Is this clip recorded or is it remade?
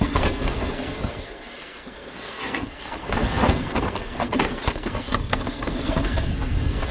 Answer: remade